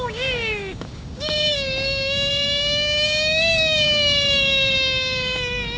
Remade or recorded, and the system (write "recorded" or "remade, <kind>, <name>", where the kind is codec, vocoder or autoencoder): remade, codec, DAC